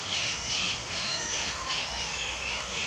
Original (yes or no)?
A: no